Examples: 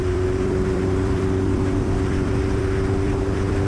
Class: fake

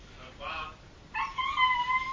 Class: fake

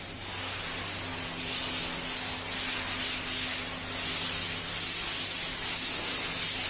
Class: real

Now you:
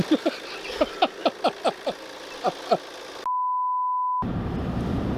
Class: real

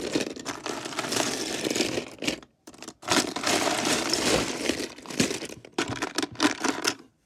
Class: fake